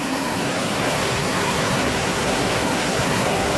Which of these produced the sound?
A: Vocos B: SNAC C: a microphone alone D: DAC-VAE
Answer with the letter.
B